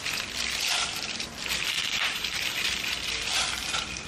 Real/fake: fake